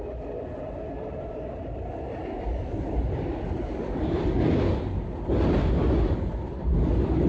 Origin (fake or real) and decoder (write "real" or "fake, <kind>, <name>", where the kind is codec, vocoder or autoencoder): real